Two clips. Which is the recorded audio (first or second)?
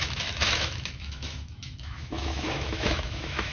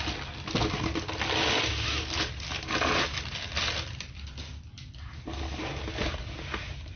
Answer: second